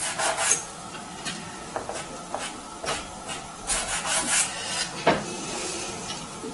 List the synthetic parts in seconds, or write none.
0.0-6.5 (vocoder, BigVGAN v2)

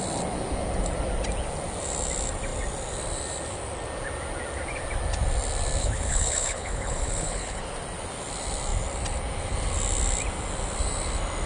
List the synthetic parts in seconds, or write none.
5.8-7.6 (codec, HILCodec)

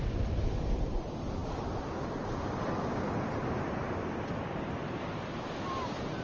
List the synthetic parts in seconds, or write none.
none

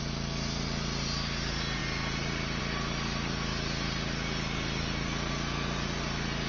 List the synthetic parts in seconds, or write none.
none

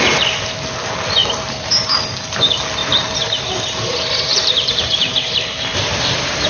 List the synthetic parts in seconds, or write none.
2.8-6.5 (vocoder, BigVGAN v2)

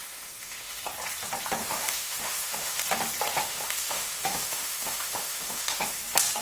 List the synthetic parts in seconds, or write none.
0.0-0.8 (autoencoder, DAC-VAE); 1.6-2.8; 3.4-6.0